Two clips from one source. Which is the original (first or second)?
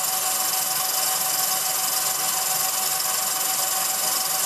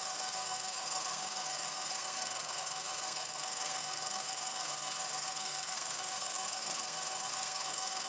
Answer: first